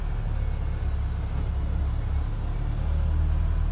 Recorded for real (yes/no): yes